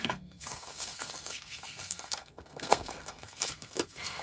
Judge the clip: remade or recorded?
remade